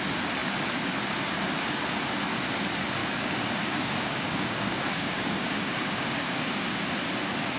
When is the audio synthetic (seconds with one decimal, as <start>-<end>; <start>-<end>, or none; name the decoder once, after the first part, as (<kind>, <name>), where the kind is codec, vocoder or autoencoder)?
3.0-6.8 (codec, DAC)